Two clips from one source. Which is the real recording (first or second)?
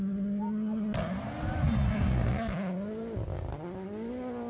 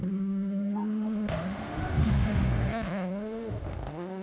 first